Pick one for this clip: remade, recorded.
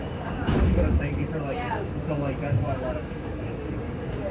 remade